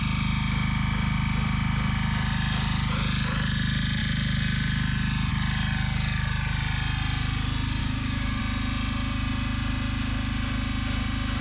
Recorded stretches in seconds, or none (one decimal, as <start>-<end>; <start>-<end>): 0.0-7.8; 8.4-11.4